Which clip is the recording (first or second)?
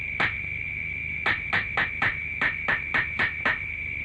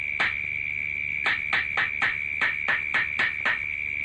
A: second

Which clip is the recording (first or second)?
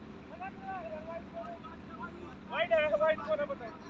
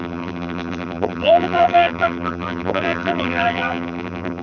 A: first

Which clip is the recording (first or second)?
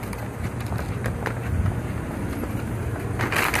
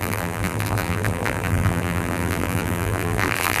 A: first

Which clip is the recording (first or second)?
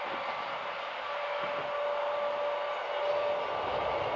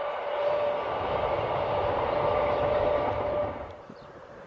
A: first